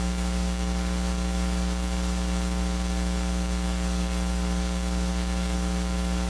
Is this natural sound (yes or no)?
no